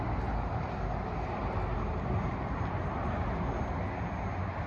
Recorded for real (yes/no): yes